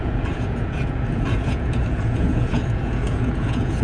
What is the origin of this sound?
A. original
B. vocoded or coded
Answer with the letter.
B